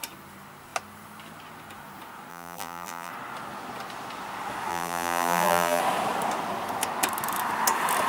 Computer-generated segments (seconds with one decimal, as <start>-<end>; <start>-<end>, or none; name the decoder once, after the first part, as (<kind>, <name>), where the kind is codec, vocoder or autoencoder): 2.3-3.1 (vocoder, BigVGAN v2); 4.7-5.8